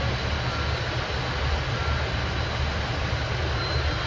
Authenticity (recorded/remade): recorded